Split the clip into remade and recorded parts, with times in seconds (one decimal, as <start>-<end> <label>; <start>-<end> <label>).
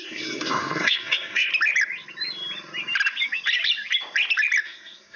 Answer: 0.0-1.5 remade; 1.5-4.6 recorded; 4.6-5.2 remade